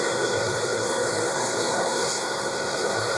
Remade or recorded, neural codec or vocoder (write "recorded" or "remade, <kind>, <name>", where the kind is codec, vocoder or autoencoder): remade, codec, SNAC